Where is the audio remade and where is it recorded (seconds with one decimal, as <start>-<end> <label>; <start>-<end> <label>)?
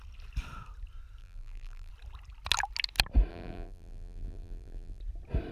0.0-1.2 recorded; 1.2-1.9 remade; 1.9-3.3 recorded; 3.3-5.0 remade; 5.0-5.5 recorded